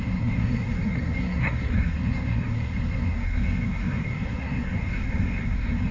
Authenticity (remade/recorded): remade